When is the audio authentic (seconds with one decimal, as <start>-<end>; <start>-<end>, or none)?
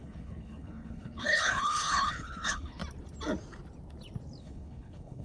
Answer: 2.8-4.4